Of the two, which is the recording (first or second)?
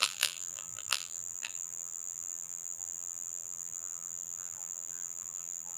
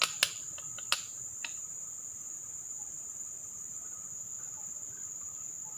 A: second